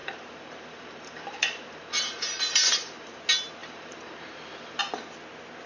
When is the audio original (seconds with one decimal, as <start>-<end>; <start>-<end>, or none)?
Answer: 3.2-3.6; 4.8-5.7